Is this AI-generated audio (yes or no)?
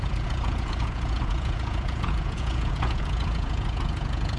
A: yes